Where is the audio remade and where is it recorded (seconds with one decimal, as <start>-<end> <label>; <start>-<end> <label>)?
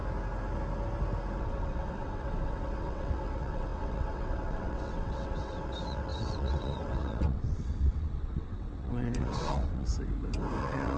0.0-1.4 recorded; 1.4-9.9 remade; 9.9-10.6 recorded; 10.6-11.0 remade